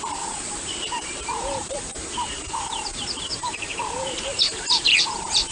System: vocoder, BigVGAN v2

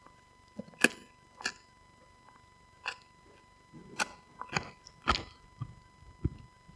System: none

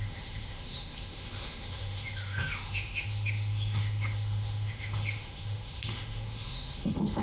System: autoencoder, DAC-VAE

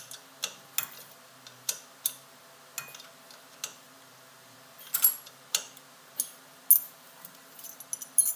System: none